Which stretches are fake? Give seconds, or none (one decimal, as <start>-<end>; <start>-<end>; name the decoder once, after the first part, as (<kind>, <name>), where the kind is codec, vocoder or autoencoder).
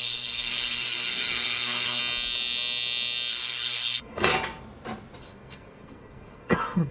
0.0-2.0 (codec, SNAC); 3.3-4.3; 5.2-6.9